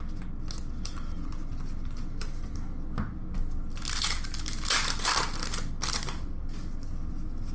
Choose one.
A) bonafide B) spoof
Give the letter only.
A